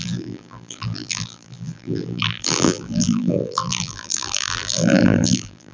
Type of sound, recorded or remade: remade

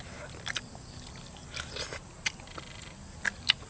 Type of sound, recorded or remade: recorded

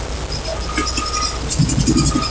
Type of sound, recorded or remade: recorded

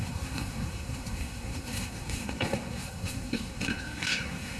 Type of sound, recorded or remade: remade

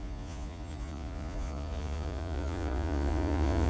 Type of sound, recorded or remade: remade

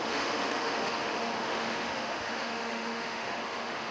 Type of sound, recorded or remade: remade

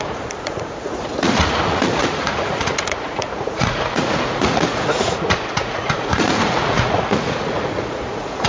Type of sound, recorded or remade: remade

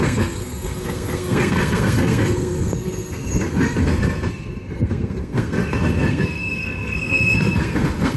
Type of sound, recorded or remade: remade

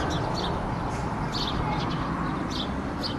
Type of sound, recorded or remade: recorded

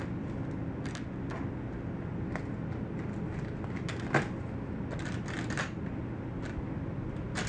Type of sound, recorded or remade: recorded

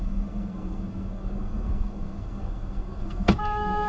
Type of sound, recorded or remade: remade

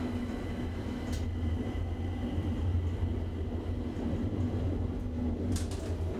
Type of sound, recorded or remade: recorded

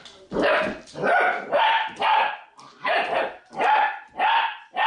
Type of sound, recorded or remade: remade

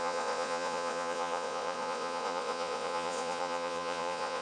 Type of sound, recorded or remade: remade